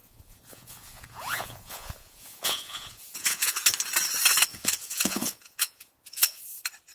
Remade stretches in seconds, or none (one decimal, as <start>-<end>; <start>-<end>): 0.0-3.6; 4.5-6.4

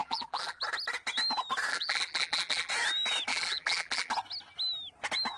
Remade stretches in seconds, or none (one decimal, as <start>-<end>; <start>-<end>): 0.0-0.6; 1.7-2.7; 3.3-4.1

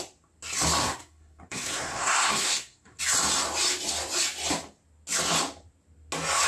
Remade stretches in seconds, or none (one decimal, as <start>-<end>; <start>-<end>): 0.8-3.0

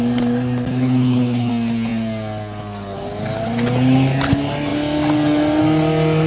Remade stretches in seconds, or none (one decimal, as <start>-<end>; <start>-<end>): 0.7-1.5